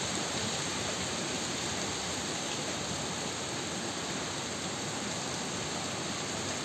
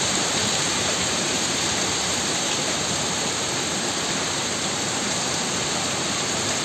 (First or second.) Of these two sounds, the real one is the first